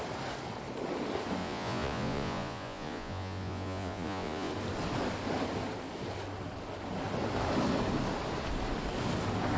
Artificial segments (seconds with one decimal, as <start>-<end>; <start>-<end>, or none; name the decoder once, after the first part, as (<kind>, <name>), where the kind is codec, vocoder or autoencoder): 1.4-4.5 (vocoder, Vocos)